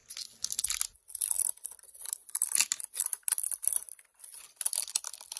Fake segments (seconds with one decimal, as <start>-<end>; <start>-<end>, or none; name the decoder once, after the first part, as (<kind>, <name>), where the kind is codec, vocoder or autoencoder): none